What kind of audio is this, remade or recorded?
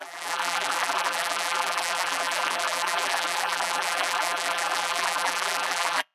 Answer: remade